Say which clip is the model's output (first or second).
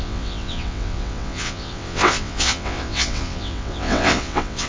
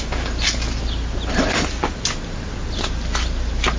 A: first